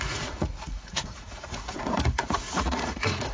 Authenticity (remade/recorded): remade